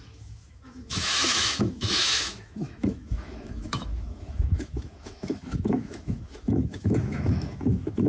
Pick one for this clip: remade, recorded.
remade